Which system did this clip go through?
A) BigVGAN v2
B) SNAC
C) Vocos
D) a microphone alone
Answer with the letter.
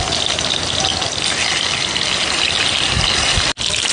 D